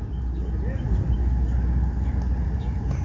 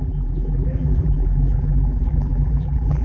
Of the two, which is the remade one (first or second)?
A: second